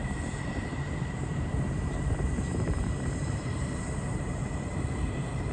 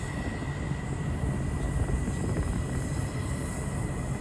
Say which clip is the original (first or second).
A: second